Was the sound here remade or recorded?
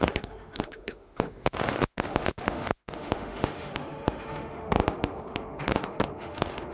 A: remade